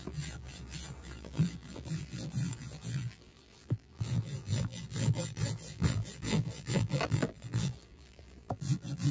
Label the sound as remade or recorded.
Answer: remade